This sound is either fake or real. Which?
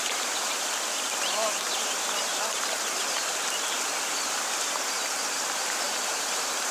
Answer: fake